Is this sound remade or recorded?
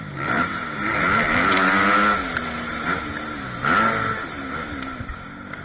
recorded